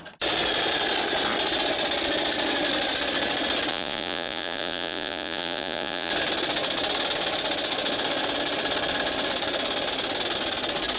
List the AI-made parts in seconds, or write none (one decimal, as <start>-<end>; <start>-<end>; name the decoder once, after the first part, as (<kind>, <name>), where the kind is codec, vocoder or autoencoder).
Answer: 3.7-6.1 (vocoder, Vocos)